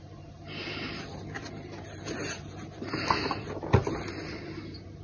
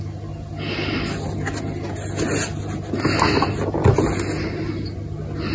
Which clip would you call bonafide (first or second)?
second